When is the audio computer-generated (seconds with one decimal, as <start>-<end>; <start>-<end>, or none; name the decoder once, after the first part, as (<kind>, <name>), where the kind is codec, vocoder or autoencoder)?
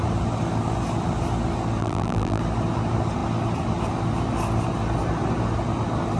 1.8-2.4 (vocoder, BigVGAN v2)